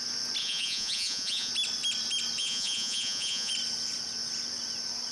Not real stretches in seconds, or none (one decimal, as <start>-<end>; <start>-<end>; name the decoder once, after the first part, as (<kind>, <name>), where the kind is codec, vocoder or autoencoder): 0.4-1.5 (vocoder, Vocos); 2.4-3.5